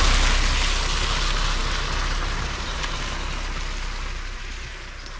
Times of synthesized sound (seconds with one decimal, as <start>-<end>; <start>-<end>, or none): 1.6-4.7